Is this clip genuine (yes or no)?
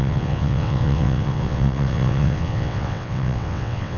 no